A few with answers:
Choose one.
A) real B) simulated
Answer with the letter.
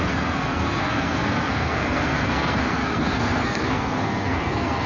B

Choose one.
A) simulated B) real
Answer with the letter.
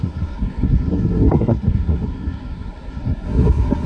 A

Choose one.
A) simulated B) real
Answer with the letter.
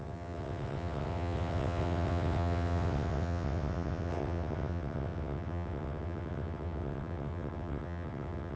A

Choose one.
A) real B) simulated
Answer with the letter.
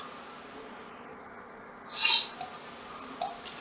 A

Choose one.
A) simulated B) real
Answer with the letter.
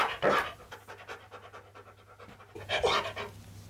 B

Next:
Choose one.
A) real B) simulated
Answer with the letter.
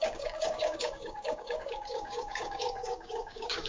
B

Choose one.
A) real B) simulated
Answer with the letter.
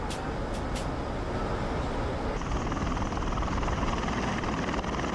B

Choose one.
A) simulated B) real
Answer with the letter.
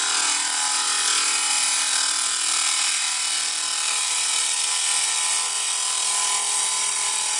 B